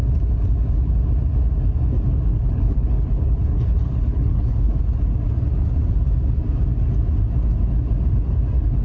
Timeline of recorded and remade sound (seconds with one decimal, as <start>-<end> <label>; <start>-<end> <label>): 0.0-2.3 recorded; 2.3-4.8 remade; 4.8-8.8 recorded